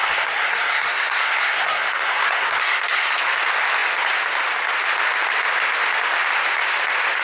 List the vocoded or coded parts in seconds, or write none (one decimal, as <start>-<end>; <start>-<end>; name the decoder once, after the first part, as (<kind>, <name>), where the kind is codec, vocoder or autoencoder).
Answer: 0.0-3.2 (codec, SNAC)